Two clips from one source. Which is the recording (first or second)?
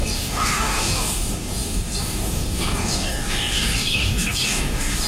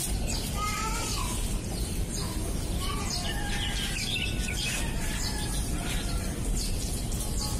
second